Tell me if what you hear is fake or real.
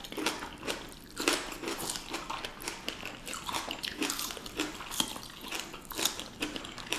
real